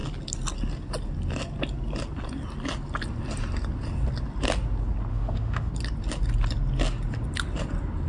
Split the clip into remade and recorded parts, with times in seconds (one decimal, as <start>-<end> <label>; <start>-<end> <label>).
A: 0.0-5.1 recorded; 5.1-5.7 remade; 5.7-8.1 recorded